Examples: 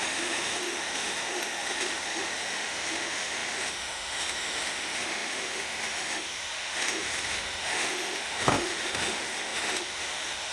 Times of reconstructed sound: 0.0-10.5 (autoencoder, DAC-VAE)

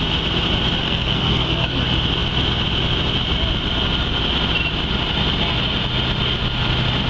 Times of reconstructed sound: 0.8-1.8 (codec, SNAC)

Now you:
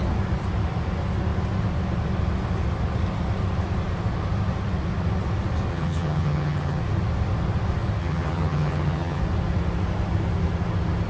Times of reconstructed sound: 5.7-6.8 (vocoder, HiFi-GAN); 8.0-9.2

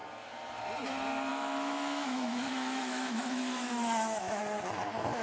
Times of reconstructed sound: 1.3-4.4 (autoencoder, DAC-VAE)

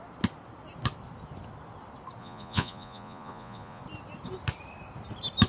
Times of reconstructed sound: 2.2-3.8 (vocoder, Vocos)